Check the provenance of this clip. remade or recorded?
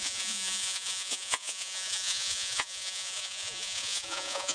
remade